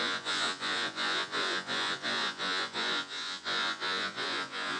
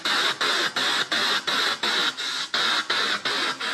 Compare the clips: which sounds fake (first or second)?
first